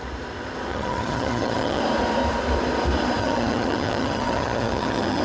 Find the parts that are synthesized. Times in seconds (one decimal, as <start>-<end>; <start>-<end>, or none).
0.7-1.8; 3.2-5.2